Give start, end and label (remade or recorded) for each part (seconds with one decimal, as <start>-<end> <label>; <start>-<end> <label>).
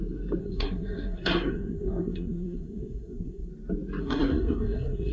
0.0-0.4 recorded; 0.4-3.5 remade; 3.5-4.0 recorded; 4.0-5.1 remade